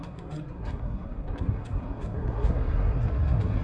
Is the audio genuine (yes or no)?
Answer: no